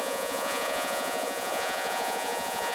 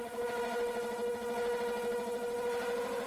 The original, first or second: second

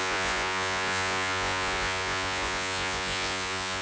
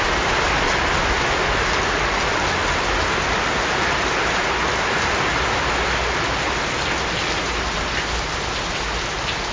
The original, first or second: second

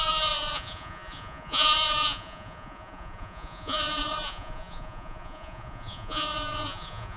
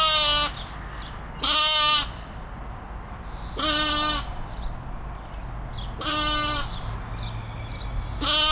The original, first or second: second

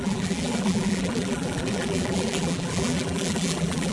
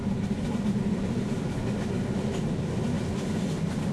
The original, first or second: second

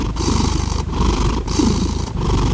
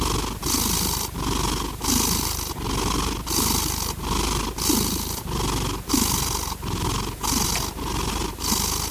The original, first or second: second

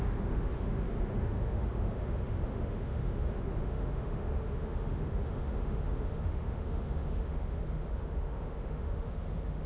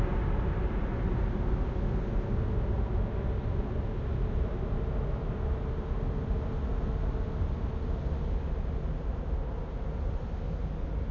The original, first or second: second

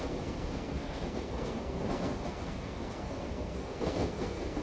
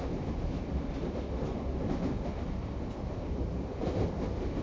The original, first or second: second